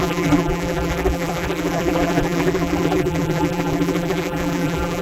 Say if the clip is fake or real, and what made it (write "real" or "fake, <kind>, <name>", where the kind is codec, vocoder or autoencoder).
fake, vocoder, BigVGAN v2